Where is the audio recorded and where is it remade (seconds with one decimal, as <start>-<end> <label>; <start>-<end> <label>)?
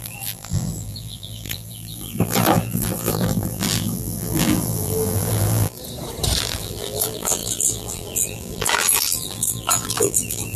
0.0-5.8 remade; 5.8-6.4 recorded; 6.4-10.6 remade